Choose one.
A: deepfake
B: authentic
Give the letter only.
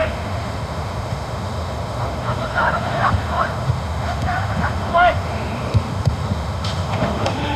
A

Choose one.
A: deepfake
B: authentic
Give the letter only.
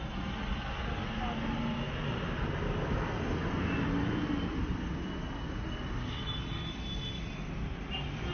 B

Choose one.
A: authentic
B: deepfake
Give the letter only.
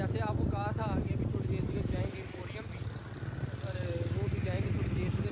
A